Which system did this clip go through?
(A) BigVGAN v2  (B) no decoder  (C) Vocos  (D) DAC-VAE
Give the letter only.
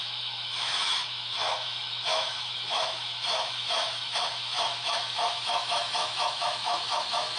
D